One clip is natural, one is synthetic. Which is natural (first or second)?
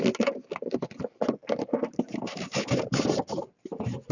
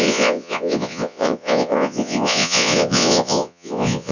first